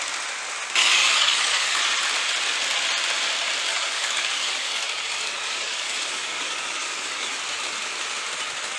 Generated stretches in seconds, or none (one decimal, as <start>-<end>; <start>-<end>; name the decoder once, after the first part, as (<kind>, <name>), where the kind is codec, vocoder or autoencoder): 0.8-1.8 (codec, DAC); 3.7-7.4